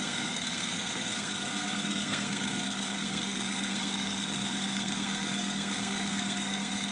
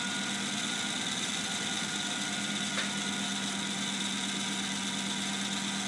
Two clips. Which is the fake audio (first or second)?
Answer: first